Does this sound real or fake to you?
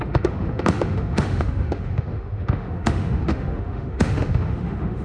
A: fake